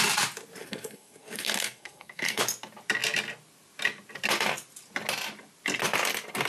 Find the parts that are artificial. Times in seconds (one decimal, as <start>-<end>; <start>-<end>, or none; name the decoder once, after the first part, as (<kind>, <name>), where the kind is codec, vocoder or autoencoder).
0.6-2.4 (codec, SNAC)